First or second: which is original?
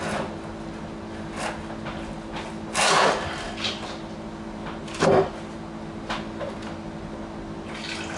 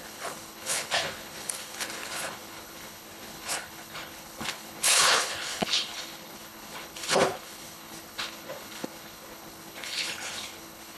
first